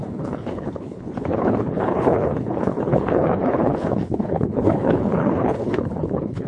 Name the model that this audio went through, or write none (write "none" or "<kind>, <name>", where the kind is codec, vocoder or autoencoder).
codec, HILCodec